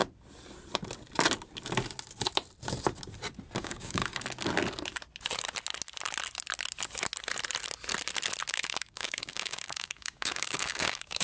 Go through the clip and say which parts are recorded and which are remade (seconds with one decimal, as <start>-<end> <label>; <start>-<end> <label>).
0.0-3.6 recorded; 3.6-4.0 remade; 4.0-8.5 recorded; 8.5-11.2 remade

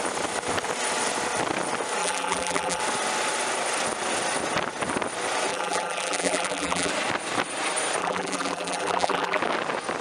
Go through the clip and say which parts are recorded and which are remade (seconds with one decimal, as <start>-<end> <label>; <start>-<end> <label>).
0.0-2.0 recorded; 2.0-2.8 remade; 2.8-5.5 recorded; 5.5-6.9 remade; 6.9-8.0 recorded; 8.0-9.4 remade; 9.4-10.0 recorded

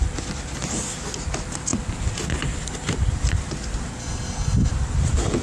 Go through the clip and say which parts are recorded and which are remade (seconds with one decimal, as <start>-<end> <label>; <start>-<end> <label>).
0.0-4.0 recorded; 4.0-4.7 remade; 4.7-5.4 recorded

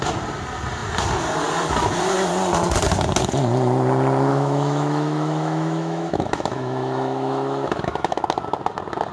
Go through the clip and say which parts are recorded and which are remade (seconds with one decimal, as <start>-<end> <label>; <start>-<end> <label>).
0.0-4.3 recorded; 4.3-8.2 remade; 8.2-9.1 recorded

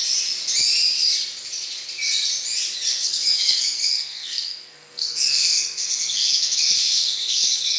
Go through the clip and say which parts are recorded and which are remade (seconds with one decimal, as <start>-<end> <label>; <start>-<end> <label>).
0.0-2.9 recorded; 2.9-7.8 remade